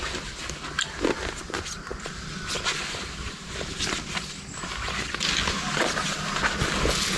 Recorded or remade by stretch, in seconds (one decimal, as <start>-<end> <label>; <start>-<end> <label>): 0.0-7.2 recorded